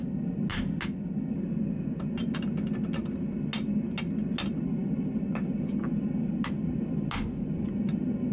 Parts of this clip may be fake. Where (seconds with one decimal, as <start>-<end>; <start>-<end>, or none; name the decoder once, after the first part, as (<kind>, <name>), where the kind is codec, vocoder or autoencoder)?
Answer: none